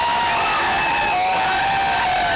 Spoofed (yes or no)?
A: no